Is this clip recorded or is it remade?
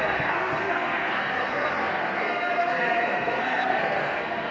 remade